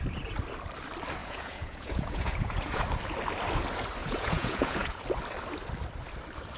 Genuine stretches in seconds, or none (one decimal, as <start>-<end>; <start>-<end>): 0.0-1.2; 2.8-4.0; 5.0-6.6